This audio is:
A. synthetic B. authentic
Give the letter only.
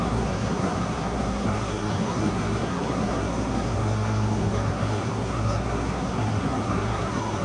A